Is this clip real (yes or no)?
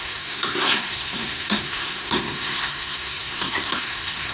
no